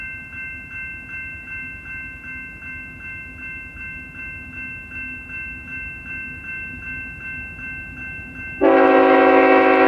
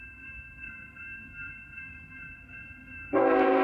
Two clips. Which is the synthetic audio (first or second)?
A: second